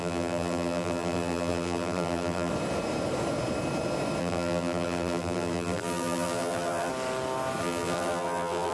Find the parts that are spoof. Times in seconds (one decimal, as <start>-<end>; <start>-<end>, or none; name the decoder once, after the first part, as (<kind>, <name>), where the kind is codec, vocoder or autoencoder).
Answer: 0.0-2.5 (vocoder, BigVGAN v2); 4.2-6.9; 7.6-8.7